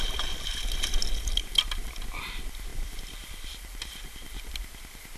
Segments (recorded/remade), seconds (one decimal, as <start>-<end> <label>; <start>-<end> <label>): 0.0-2.7 recorded; 2.7-4.5 remade; 4.5-5.2 recorded